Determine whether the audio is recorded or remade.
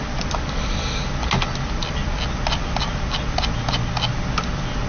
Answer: recorded